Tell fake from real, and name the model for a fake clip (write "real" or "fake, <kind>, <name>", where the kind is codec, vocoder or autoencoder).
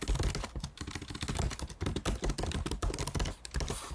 real